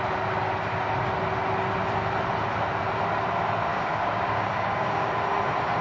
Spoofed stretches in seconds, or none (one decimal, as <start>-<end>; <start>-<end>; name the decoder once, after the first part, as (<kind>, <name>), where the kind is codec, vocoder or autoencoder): 3.7-5.1 (codec, DAC)